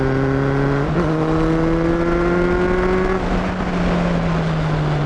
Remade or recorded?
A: recorded